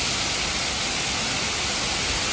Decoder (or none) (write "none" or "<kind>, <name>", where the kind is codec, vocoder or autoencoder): none